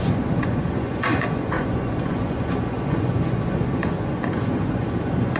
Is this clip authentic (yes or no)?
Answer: no